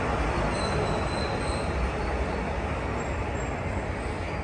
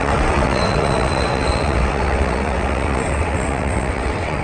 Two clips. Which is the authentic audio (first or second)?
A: first